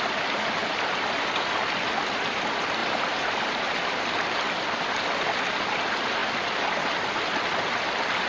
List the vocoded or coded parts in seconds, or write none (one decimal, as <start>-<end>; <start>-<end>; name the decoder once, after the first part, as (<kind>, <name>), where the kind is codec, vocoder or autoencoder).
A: 0.6-1.4 (vocoder, BigVGAN v2); 2.8-5.5